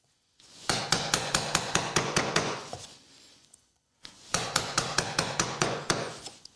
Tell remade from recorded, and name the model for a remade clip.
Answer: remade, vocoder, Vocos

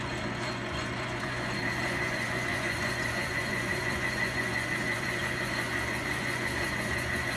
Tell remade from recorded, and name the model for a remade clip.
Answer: remade, vocoder, Vocos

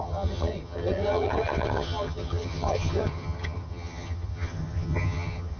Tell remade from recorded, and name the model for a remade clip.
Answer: remade, vocoder, HiFi-GAN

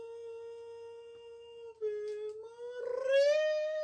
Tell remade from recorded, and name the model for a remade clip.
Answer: recorded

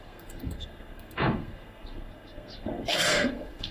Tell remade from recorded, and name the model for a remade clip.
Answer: remade, codec, SNAC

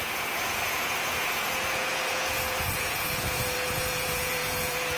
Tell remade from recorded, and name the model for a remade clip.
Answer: remade, vocoder, Vocos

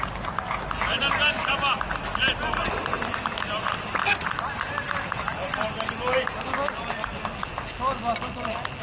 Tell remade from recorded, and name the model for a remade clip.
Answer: recorded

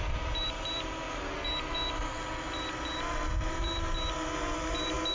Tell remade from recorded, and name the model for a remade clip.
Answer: recorded